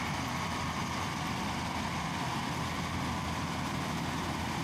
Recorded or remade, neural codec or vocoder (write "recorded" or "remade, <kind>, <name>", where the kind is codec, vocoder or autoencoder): recorded